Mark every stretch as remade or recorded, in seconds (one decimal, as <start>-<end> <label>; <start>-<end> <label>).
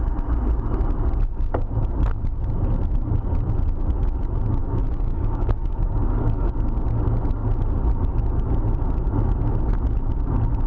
0.0-4.6 recorded; 4.6-6.5 remade; 6.5-10.7 recorded